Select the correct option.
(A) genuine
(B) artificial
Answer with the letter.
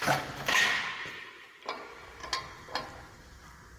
A